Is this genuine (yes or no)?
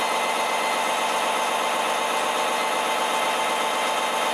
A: yes